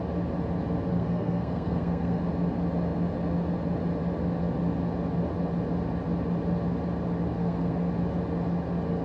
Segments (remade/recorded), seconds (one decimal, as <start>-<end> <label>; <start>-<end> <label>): 0.0-0.9 recorded; 0.9-2.2 remade; 2.2-7.4 recorded; 7.4-7.9 remade; 7.9-9.0 recorded